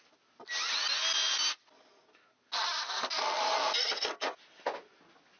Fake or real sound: real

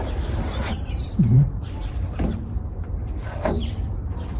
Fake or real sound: fake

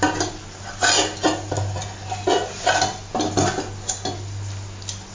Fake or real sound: real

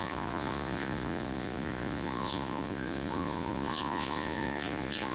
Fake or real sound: fake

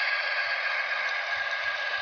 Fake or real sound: real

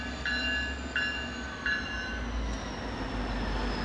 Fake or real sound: real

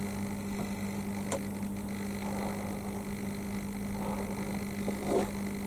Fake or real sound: real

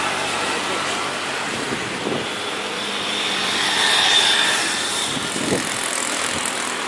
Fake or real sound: fake